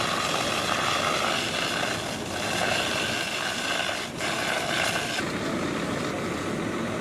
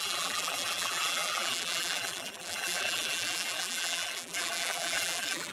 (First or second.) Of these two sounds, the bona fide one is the first